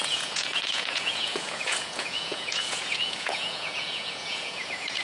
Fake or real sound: fake